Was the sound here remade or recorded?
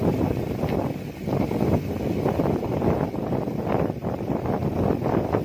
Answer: recorded